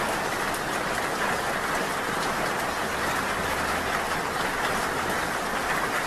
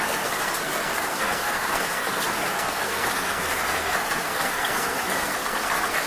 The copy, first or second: second